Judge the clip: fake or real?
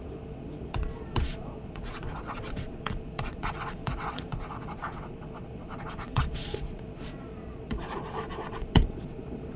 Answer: fake